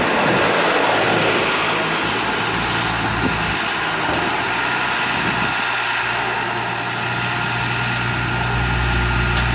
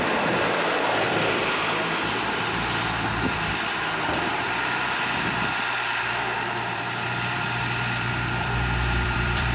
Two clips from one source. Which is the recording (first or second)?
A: first